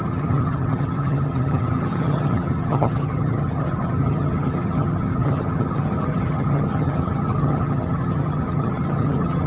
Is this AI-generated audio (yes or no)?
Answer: yes